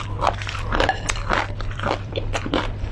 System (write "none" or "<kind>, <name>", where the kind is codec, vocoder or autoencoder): vocoder, BigVGAN v2